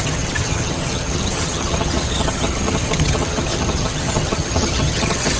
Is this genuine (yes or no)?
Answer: no